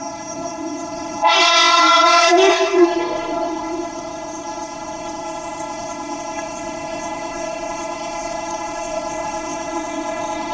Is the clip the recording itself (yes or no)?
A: no